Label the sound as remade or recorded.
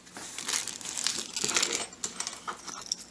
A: recorded